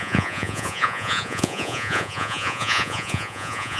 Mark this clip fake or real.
fake